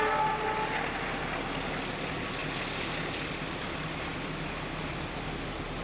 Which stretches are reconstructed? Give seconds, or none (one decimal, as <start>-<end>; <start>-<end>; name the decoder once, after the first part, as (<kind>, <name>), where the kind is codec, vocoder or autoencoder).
none

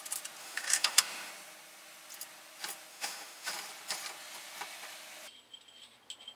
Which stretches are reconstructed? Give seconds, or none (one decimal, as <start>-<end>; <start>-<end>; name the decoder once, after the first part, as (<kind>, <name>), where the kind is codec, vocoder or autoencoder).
0.4-1.3 (autoencoder, DAC-VAE); 2.9-3.5